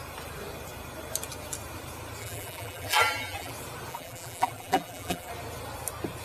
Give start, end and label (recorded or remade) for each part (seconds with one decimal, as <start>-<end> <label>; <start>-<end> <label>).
0.0-2.2 recorded; 2.2-3.5 remade; 3.5-3.9 recorded; 3.9-5.3 remade; 5.3-6.2 recorded

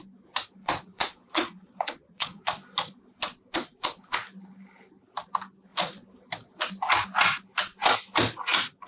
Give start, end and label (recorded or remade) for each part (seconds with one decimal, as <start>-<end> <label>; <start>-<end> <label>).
0.0-0.6 recorded; 0.6-2.4 remade; 2.4-8.9 recorded

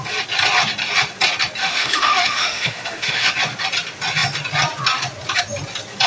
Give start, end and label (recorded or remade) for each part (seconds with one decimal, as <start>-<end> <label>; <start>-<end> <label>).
0.0-1.6 recorded; 1.6-3.3 remade; 3.3-6.1 recorded